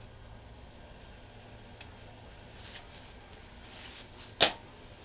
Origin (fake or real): real